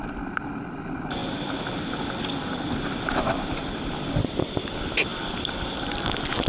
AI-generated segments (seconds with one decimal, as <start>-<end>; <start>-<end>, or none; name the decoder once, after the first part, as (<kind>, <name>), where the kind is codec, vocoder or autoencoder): none